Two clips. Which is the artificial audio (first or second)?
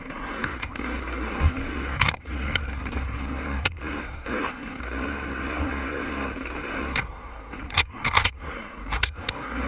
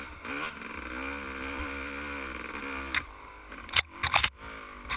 first